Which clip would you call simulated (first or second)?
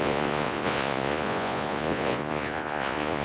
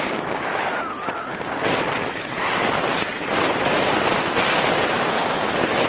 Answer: first